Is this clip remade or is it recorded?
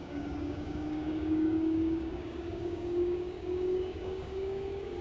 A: remade